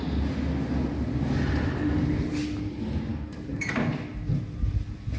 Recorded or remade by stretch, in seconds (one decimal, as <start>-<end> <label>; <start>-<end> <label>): 0.0-3.1 recorded; 3.1-3.7 remade; 3.7-5.2 recorded